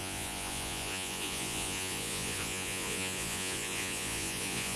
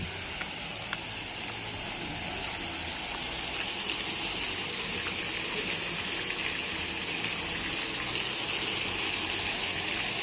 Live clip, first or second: second